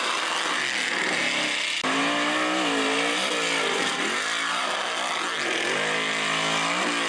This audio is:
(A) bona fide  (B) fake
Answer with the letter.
A